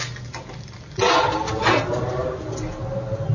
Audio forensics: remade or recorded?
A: recorded